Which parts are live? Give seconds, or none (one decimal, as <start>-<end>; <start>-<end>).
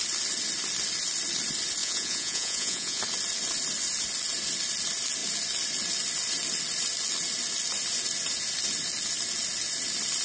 0.0-1.8; 3.0-10.2